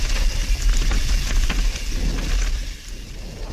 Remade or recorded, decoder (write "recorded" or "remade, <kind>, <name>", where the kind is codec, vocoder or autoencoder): recorded